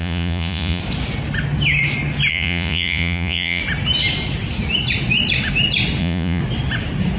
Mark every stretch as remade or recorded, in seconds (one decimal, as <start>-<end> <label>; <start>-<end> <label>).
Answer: 0.0-0.8 remade; 0.8-2.3 recorded; 2.3-3.6 remade; 3.6-6.0 recorded; 6.0-6.4 remade; 6.4-7.2 recorded